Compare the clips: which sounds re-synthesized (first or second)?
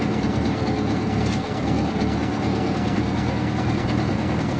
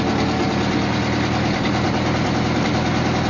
first